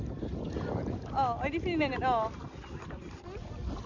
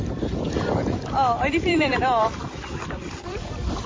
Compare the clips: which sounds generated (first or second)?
second